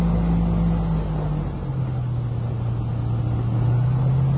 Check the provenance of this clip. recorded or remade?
recorded